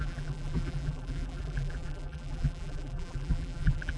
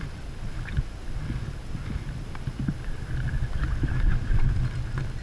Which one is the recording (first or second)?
second